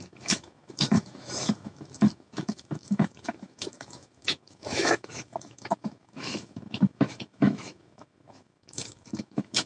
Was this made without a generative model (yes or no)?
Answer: no